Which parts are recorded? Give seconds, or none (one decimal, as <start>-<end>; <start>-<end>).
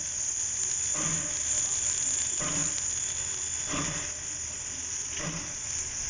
0.0-6.1